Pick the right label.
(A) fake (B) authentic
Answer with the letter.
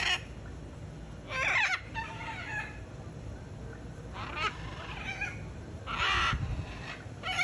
B